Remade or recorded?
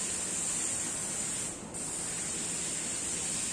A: recorded